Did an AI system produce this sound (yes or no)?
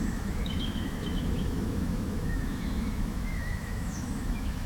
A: yes